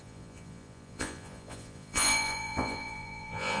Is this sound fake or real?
fake